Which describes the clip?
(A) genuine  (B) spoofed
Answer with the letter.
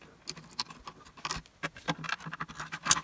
A